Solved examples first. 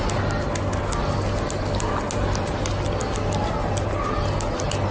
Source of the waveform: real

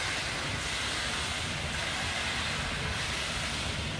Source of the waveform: real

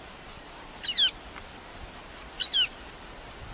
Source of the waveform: real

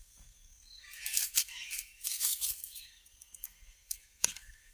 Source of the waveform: fake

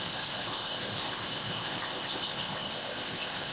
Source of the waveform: fake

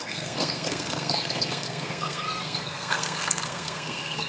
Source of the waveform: fake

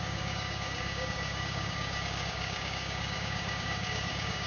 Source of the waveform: fake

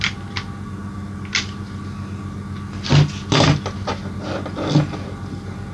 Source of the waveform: real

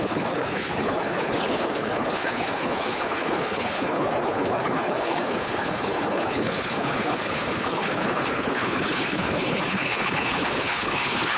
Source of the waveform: fake